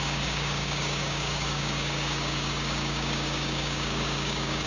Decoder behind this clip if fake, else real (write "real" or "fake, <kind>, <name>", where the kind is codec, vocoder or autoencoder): fake, codec, DAC